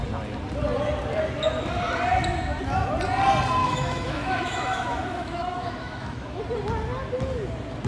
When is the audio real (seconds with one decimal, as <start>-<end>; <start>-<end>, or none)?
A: 0.0-3.6; 6.4-7.9